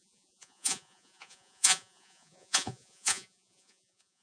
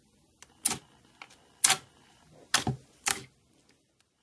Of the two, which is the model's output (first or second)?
first